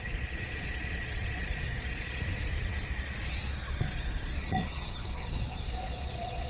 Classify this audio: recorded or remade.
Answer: remade